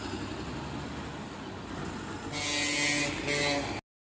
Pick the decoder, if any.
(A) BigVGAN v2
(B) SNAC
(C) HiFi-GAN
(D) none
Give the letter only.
D